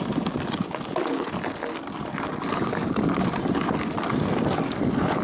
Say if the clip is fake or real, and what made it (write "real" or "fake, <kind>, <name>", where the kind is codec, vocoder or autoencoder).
real